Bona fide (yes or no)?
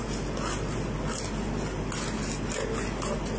yes